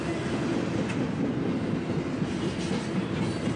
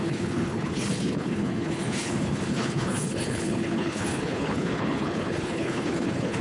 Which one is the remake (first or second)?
second